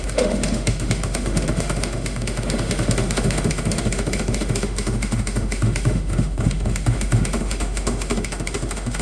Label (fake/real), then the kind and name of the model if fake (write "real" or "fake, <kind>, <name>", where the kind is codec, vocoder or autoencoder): fake, autoencoder, DAC-VAE